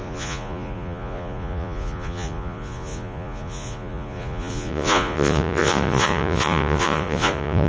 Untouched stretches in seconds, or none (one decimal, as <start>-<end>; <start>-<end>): none